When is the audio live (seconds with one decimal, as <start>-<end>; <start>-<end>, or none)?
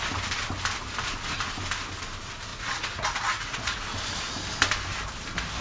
0.0-2.5; 3.8-5.6